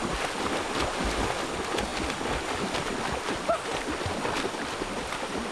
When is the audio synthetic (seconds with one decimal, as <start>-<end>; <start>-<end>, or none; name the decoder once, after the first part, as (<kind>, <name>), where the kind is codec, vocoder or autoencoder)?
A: none